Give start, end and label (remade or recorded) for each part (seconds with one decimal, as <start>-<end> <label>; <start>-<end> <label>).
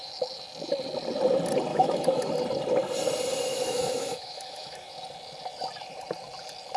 0.0-1.7 recorded; 1.7-2.3 remade; 2.3-3.5 recorded; 3.5-4.9 remade; 4.9-6.8 recorded